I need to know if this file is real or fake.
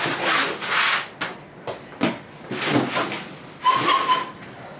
real